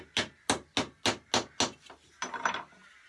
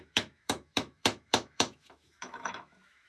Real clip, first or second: first